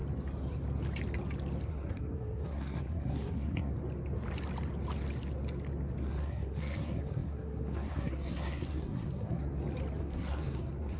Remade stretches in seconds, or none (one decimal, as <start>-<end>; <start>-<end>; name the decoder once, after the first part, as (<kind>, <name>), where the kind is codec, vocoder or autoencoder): 1.7-3.7 (codec, SNAC); 6.0-9.4; 10.0-11.0